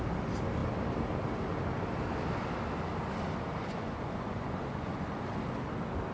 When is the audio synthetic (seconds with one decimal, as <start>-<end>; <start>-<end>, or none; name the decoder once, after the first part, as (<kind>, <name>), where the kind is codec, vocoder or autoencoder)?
3.6-5.2 (vocoder, Vocos)